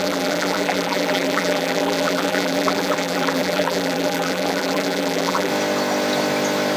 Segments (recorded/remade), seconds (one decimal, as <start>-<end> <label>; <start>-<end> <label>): 0.0-5.5 remade; 5.5-6.8 recorded